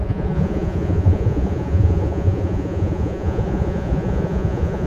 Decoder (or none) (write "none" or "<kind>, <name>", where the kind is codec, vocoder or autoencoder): vocoder, Vocos